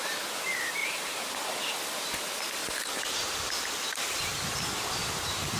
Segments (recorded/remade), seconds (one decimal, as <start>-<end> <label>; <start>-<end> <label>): 0.0-0.8 recorded; 0.8-1.3 remade; 1.3-2.6 recorded; 2.6-3.5 remade; 3.5-5.6 recorded